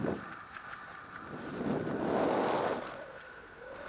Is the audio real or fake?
real